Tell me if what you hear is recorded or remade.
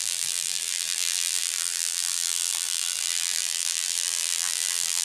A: remade